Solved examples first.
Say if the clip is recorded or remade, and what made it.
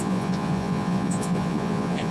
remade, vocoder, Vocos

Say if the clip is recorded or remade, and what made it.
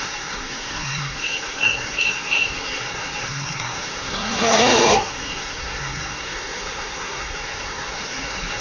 remade, codec, SNAC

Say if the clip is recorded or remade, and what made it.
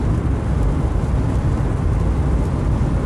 recorded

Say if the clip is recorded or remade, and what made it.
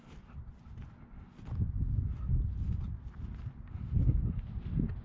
recorded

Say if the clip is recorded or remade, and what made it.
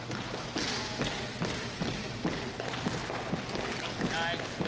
recorded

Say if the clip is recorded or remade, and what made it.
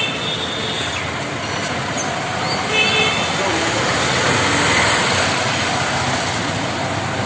recorded